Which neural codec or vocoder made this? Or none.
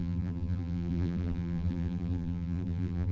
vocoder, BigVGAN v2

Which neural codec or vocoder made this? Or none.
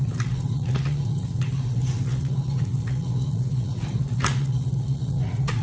vocoder, Vocos